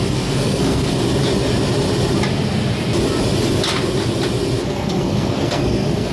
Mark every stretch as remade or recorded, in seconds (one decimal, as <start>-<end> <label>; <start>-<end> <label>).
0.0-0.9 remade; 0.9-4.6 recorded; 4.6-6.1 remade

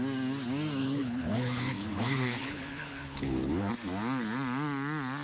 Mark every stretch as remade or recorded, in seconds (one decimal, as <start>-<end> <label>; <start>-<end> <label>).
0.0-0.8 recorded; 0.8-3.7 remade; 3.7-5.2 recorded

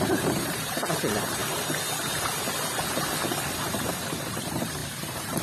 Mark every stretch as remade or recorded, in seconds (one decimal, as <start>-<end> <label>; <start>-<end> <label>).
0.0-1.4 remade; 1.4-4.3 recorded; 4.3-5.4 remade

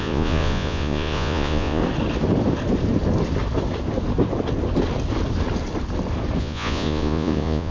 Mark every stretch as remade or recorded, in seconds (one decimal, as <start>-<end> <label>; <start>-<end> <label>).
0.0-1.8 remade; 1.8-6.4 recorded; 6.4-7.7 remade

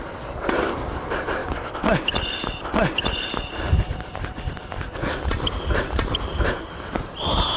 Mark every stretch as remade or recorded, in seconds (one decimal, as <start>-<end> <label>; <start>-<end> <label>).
0.0-1.4 recorded; 1.4-5.7 remade; 5.7-7.6 recorded

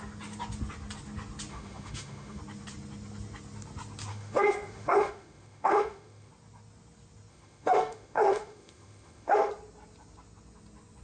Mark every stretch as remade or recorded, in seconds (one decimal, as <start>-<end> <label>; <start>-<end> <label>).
0.0-1.5 recorded; 1.5-2.4 remade; 2.4-4.1 recorded; 4.1-6.3 remade; 6.3-7.3 recorded; 7.3-9.5 remade; 9.5-11.0 recorded

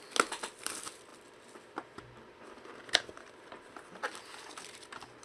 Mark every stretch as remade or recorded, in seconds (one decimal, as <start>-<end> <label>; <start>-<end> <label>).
0.0-5.2 recorded

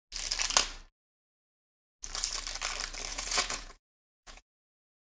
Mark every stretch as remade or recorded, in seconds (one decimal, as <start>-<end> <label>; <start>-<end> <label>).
0.0-3.1 recorded; 3.1-5.1 remade